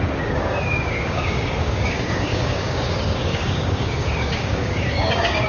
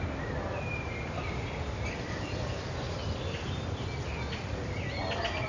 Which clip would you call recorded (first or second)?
second